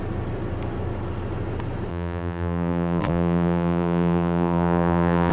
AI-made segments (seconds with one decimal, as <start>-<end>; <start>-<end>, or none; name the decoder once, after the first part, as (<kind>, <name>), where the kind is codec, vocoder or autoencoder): 1.9-5.3 (vocoder, BigVGAN v2)